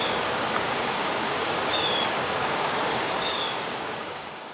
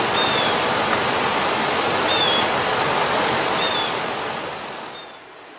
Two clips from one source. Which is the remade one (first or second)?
first